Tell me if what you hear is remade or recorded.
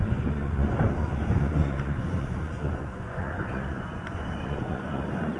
remade